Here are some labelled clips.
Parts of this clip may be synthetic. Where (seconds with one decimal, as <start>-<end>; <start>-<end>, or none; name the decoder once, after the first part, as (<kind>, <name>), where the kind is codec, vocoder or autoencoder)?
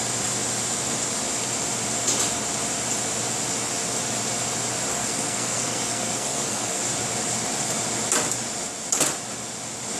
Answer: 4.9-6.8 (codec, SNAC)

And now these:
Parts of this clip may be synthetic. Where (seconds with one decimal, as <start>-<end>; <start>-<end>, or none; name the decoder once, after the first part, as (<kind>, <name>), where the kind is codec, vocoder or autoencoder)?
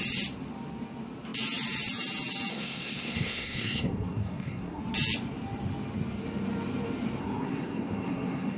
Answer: 2.5-4.8 (codec, SNAC); 7.2-8.6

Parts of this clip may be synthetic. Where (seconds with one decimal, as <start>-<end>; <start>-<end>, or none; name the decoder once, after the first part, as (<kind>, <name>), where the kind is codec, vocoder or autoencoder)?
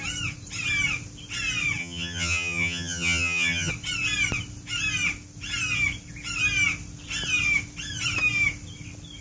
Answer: 1.8-3.7 (vocoder, HiFi-GAN)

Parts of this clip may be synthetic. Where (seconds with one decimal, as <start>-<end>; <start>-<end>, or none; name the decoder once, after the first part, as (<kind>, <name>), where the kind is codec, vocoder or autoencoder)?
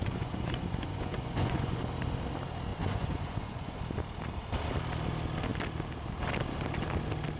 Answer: 0.0-1.8 (vocoder, Vocos); 2.7-3.8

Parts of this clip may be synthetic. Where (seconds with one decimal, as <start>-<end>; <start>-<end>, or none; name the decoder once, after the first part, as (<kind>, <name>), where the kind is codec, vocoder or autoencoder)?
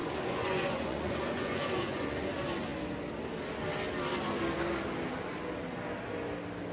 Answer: 0.0-2.3 (vocoder, Vocos)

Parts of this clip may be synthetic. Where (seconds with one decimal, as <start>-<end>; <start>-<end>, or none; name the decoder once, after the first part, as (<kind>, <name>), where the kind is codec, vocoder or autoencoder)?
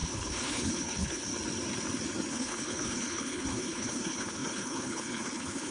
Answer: 0.0-1.3 (codec, HILCodec); 2.3-5.7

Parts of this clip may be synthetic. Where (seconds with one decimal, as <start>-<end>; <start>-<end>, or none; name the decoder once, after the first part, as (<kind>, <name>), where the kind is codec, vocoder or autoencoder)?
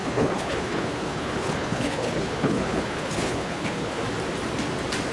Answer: 0.0-4.0 (codec, HILCodec)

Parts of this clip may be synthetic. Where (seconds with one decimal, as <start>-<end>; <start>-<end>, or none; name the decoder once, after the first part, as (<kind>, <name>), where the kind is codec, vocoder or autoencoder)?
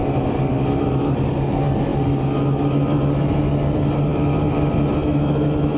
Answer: none